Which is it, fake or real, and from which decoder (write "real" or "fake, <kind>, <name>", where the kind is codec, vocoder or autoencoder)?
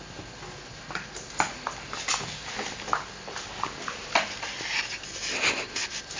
real